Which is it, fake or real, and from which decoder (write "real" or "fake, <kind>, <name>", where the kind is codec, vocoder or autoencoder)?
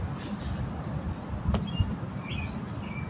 real